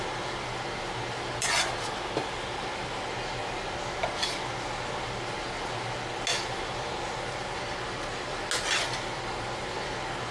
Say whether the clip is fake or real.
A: real